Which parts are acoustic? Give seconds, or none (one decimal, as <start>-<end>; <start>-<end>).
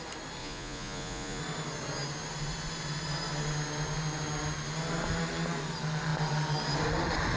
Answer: 0.0-0.4; 1.4-7.4